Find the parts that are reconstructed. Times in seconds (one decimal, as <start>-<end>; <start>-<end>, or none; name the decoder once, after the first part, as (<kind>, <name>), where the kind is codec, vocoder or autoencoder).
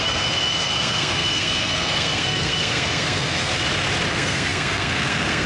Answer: 0.0-3.5 (codec, SNAC); 4.1-5.5